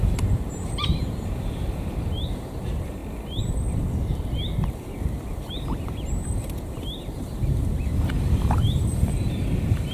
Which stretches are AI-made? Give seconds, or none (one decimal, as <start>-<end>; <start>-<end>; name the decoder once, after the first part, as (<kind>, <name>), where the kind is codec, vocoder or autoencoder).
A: 0.0-3.0 (vocoder, BigVGAN v2); 5.5-9.9